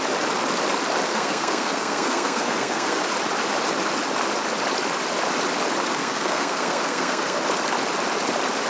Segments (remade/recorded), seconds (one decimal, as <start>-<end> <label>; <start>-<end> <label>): 0.0-1.1 recorded; 1.1-3.0 remade; 3.0-6.0 recorded; 6.0-7.4 remade; 7.4-8.7 recorded